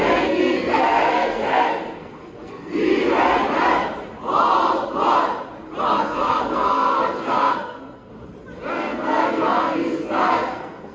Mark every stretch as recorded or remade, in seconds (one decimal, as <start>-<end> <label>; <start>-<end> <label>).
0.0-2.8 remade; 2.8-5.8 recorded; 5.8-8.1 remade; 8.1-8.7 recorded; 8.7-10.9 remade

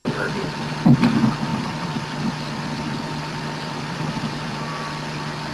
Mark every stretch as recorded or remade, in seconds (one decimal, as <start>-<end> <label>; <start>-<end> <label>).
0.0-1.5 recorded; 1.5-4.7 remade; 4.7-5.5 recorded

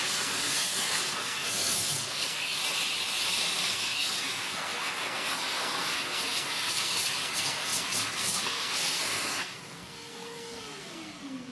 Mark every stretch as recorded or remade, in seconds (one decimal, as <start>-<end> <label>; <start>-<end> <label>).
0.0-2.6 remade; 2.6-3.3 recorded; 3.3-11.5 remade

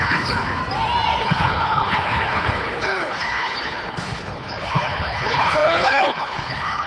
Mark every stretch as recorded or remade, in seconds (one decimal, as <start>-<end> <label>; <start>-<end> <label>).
0.0-0.6 remade; 0.6-1.2 recorded; 1.2-6.9 remade

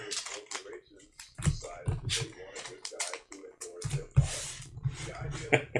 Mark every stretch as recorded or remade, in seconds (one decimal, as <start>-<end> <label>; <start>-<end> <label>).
0.0-3.7 remade; 3.7-4.7 recorded; 4.7-5.8 remade

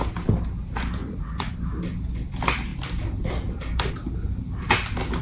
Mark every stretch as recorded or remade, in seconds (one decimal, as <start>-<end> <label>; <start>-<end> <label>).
0.0-1.0 recorded; 1.0-1.5 remade; 1.5-5.2 recorded